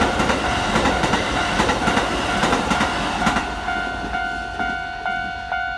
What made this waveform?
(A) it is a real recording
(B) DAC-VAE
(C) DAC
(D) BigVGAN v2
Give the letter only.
A